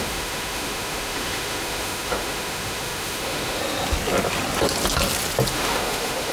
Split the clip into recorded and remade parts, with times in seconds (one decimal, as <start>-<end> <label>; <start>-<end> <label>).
0.0-3.6 remade; 3.6-5.5 recorded; 5.5-6.3 remade